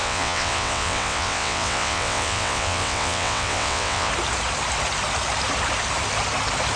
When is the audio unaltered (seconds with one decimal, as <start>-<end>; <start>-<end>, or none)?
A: 4.1-6.8

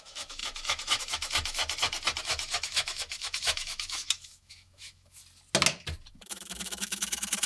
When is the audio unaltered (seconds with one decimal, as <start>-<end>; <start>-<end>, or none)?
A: 1.6-2.2; 5.2-6.1

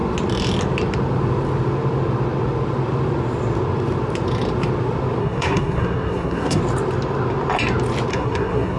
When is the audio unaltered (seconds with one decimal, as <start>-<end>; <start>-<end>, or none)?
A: 0.0-5.2; 6.6-8.1

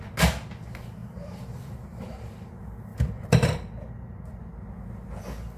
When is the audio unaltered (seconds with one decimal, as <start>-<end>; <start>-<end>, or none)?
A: 0.0-1.0; 2.3-2.9; 4.5-5.6

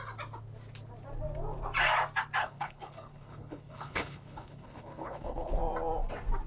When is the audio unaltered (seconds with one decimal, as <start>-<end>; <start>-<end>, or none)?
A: 0.0-2.4; 5.6-6.5

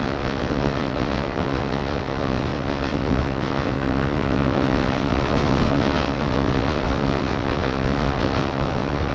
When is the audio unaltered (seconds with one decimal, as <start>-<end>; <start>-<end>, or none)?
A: none

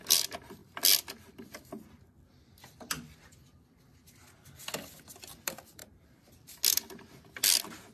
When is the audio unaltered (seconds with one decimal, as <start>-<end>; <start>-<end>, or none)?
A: 0.0-5.8; 6.3-7.9

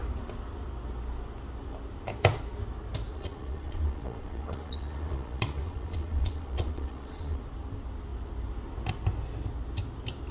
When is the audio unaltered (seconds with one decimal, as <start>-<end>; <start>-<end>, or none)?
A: 0.0-3.1; 7.4-10.3